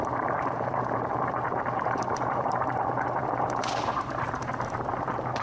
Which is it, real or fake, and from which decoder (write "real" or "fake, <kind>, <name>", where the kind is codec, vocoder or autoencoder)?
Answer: fake, vocoder, BigVGAN v2